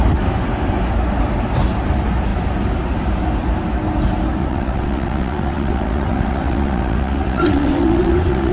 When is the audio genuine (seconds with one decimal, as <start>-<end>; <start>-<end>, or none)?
0.0-4.4